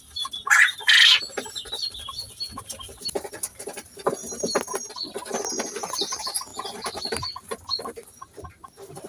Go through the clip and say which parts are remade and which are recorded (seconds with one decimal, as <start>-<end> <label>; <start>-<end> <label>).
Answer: 0.0-9.1 recorded